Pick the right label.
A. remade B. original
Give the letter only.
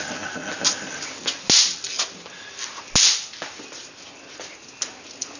B